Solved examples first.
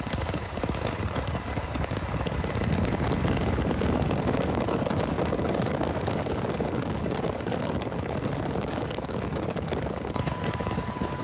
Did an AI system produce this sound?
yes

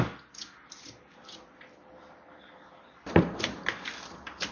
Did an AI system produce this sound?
no